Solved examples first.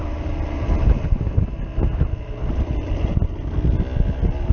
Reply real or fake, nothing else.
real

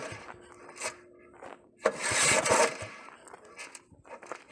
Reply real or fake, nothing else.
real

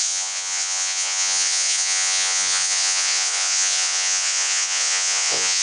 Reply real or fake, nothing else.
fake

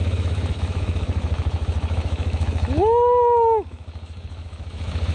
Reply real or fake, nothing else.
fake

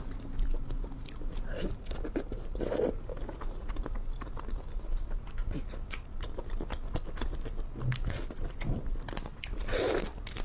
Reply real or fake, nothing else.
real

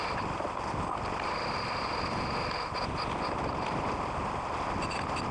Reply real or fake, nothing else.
real